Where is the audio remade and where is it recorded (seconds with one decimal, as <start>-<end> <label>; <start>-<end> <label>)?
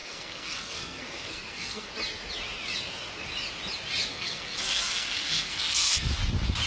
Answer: 0.0-1.9 remade; 1.9-4.1 recorded; 4.1-6.1 remade; 6.1-6.7 recorded